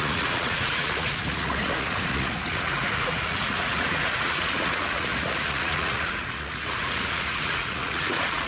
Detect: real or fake fake